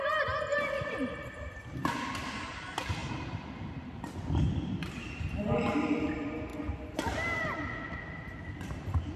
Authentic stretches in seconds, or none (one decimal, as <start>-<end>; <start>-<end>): 0.0-0.5; 1.9-3.0; 5.3-9.2